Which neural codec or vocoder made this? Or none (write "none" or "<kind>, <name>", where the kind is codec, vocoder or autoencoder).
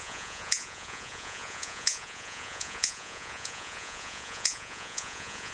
vocoder, Vocos